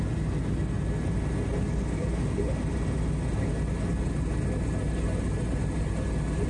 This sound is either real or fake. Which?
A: real